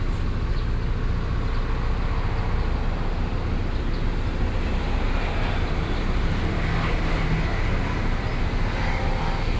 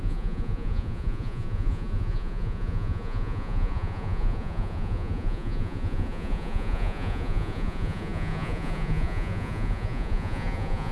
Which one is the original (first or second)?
first